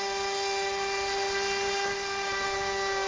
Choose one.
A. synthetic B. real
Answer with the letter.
B